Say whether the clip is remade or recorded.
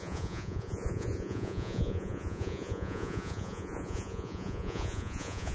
remade